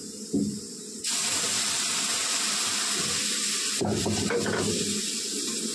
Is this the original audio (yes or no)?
yes